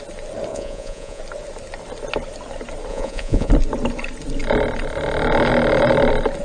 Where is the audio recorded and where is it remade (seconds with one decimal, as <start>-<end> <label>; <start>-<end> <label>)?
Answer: 0.0-0.5 recorded; 0.5-1.2 remade; 1.2-2.9 recorded; 2.9-3.5 remade; 3.5-6.4 recorded

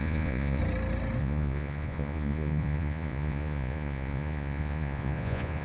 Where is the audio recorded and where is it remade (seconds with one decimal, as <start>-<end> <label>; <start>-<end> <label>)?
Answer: 0.0-0.6 remade; 0.6-1.2 recorded; 1.2-5.6 remade

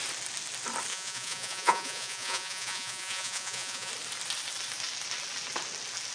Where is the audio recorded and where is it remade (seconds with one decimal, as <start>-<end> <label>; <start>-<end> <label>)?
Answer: 0.0-0.9 recorded; 0.9-3.9 remade; 3.9-6.1 recorded

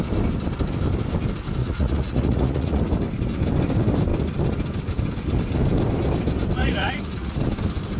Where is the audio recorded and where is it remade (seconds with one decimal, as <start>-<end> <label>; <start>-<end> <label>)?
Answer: 0.0-1.6 recorded; 1.6-2.8 remade; 2.8-6.6 recorded; 6.6-7.4 remade; 7.4-8.0 recorded

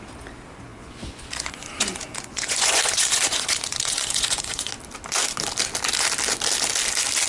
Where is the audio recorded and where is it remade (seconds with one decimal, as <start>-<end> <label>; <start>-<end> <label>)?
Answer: 0.0-0.7 recorded; 0.7-4.7 remade; 4.7-7.3 recorded

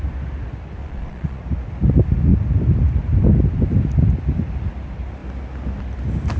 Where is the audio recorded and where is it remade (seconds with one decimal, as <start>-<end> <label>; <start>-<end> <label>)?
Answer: 0.0-0.8 recorded; 0.8-1.4 remade; 1.4-6.4 recorded